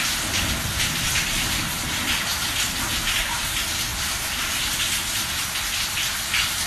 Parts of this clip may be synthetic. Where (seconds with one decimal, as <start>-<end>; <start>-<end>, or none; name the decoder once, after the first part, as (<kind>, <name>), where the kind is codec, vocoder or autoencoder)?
none